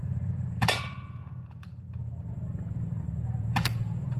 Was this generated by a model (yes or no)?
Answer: yes